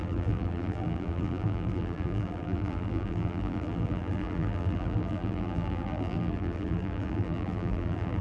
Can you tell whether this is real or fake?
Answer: fake